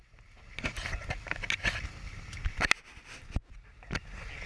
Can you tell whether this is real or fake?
real